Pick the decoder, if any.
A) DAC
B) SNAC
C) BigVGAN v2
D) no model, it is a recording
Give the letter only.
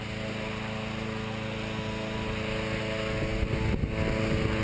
D